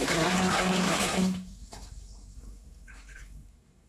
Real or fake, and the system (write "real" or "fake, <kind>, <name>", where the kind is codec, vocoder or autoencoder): fake, codec, SNAC